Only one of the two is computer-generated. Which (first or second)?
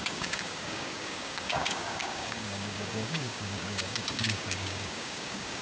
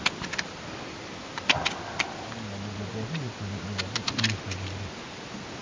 first